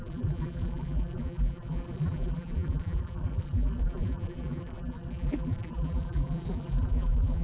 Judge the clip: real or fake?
fake